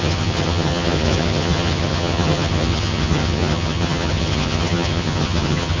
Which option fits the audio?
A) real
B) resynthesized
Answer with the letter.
B